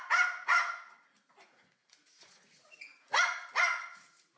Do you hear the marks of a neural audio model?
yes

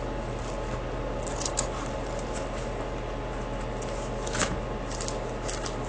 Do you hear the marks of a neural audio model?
no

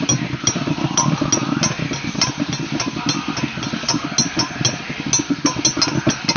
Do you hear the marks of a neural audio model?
no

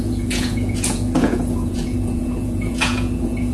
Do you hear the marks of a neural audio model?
yes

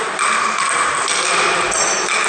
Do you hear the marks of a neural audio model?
no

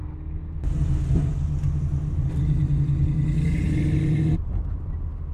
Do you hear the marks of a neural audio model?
no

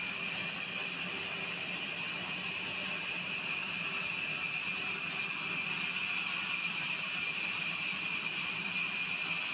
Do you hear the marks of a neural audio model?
no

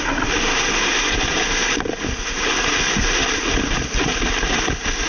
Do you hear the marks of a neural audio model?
no